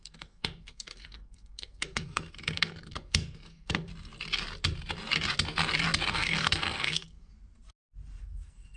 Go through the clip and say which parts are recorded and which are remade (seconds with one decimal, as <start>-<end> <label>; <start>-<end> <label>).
0.0-3.9 remade; 3.9-6.1 recorded; 6.1-7.3 remade; 7.3-8.2 recorded; 8.2-8.8 remade